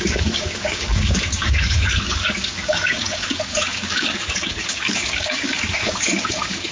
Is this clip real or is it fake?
fake